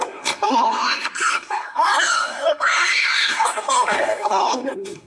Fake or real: fake